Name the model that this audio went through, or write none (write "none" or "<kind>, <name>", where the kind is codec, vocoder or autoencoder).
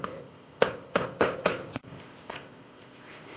codec, ZipCodec